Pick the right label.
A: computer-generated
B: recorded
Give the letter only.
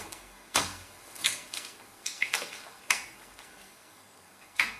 A